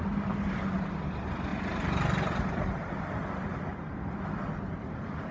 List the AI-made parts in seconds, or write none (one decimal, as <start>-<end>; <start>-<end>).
none